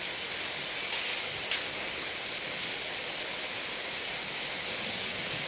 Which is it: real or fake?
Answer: real